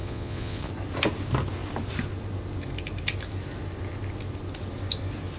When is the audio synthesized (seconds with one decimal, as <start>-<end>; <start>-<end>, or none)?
0.0-0.7